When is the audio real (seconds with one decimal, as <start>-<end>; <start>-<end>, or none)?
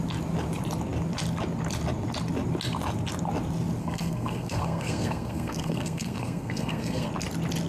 0.0-3.8; 7.1-7.7